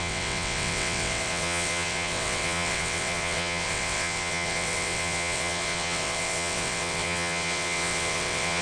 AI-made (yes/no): yes